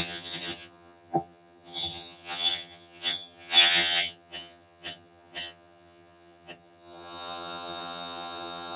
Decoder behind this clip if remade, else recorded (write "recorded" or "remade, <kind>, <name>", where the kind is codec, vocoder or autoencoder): remade, vocoder, HiFi-GAN